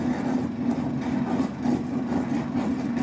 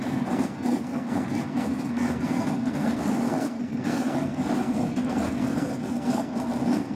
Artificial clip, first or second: second